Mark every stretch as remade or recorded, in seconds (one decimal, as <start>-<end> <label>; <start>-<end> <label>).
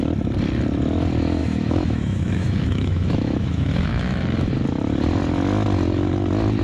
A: 0.0-1.4 recorded; 1.4-4.5 remade; 4.5-6.6 recorded